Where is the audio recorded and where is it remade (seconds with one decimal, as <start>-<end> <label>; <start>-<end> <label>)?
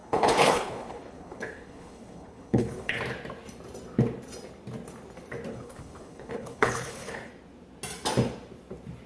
0.0-3.0 remade; 3.0-5.5 recorded; 5.5-7.3 remade; 7.3-9.1 recorded